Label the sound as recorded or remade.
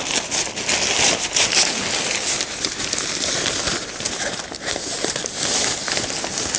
recorded